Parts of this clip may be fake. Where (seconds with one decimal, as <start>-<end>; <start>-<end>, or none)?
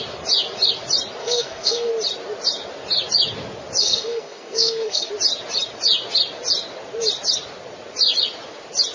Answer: 1.2-1.9; 3.8-5.1